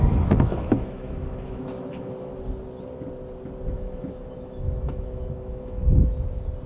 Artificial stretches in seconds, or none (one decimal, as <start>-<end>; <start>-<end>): 0.0-2.3; 3.7-5.8